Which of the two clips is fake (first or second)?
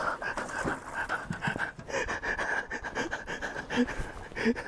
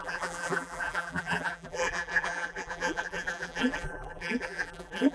second